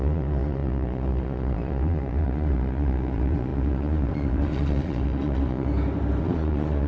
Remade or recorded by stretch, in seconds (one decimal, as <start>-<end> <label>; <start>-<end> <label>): 0.0-5.7 remade; 5.7-6.2 recorded; 6.2-6.9 remade